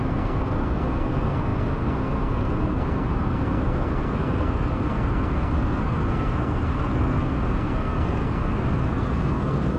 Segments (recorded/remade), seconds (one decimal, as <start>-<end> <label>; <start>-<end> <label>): 0.0-9.8 remade